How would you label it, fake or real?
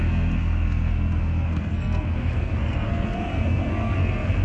fake